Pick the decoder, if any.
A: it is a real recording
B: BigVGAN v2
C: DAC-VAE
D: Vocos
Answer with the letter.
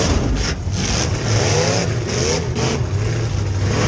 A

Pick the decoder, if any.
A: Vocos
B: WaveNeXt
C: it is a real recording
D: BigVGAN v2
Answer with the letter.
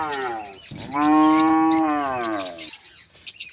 C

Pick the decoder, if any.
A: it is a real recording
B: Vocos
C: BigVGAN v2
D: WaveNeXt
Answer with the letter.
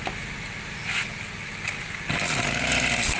A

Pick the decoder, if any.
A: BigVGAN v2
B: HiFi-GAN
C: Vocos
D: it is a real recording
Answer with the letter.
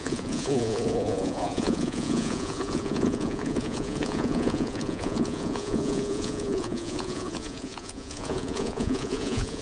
C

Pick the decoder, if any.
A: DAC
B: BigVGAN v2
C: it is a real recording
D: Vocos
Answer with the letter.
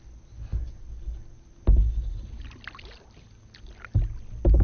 C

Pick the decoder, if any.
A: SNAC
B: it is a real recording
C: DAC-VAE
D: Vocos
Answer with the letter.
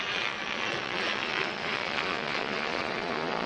D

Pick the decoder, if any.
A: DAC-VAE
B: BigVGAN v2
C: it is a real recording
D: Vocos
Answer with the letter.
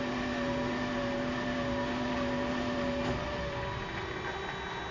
C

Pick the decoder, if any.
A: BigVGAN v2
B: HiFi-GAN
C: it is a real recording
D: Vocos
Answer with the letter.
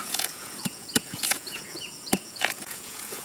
D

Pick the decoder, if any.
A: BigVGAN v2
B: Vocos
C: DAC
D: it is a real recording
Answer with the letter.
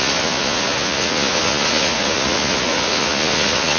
B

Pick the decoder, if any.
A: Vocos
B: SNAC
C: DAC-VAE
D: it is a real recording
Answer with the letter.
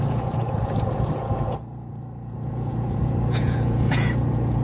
A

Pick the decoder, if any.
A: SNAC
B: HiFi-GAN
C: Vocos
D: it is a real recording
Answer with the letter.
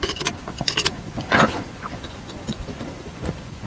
C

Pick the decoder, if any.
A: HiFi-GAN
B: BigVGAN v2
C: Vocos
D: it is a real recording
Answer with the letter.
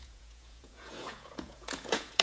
C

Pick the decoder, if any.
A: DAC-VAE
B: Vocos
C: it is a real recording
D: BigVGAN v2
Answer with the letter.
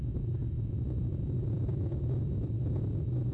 B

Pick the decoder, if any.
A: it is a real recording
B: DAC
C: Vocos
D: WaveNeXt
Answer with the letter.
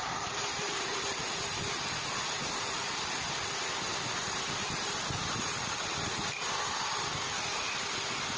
A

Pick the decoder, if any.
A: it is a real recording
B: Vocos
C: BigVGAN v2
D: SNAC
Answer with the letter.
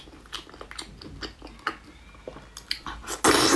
A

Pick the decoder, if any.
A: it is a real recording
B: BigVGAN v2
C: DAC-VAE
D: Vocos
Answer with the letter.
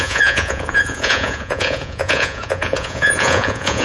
D